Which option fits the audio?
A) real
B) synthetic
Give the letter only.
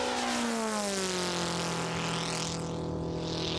A